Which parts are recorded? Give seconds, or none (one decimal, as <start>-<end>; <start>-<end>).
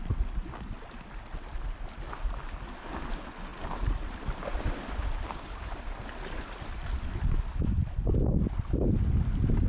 0.0-9.7